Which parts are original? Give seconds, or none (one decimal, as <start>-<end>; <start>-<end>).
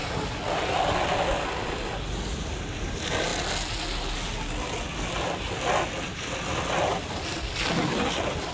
0.0-8.5